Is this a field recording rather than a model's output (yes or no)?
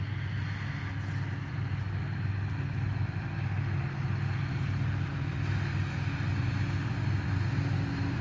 yes